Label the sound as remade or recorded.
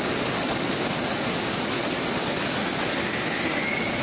recorded